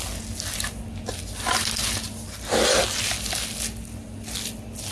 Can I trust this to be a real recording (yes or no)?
yes